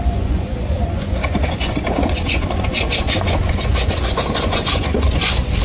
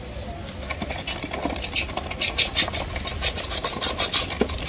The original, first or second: second